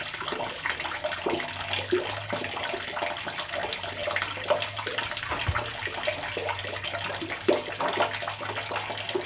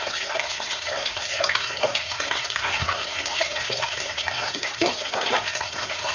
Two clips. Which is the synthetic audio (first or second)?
second